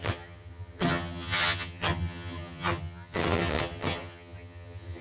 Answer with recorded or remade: remade